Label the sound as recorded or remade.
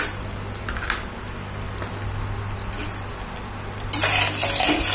recorded